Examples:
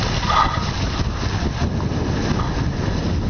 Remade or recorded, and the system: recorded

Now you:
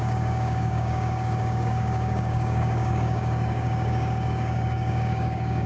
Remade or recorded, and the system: remade, codec, DAC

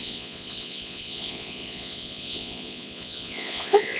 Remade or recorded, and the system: remade, vocoder, Vocos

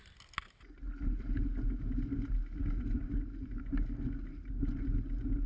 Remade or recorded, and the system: recorded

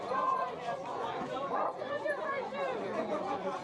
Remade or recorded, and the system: remade, vocoder, Vocos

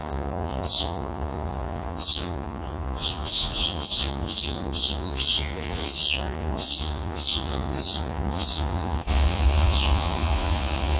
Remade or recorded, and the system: remade, vocoder, Vocos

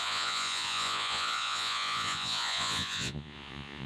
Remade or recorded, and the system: remade, vocoder, Vocos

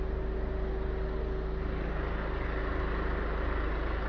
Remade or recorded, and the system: recorded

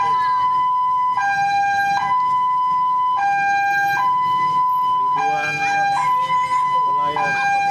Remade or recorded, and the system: recorded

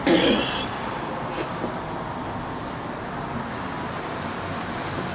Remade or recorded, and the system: recorded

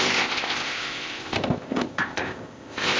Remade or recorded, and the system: remade, codec, ZipCodec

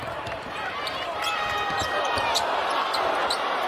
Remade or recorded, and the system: recorded